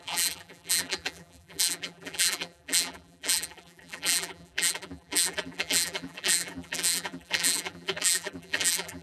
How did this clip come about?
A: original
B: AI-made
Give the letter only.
B